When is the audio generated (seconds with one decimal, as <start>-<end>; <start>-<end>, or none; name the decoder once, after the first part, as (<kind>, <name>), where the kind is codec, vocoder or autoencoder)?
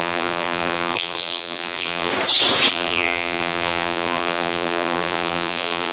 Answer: 0.0-2.1 (vocoder, BigVGAN v2); 2.7-5.9